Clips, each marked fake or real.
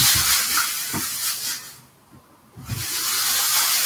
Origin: real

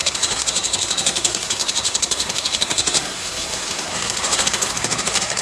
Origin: fake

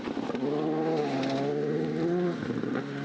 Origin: real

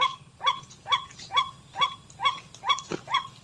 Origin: real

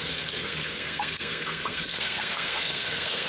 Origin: fake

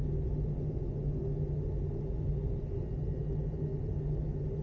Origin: real